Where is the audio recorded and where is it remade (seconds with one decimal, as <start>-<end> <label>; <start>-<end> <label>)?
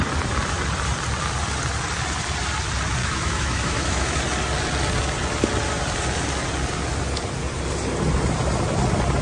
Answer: 0.0-3.0 recorded; 3.0-4.2 remade; 4.2-9.2 recorded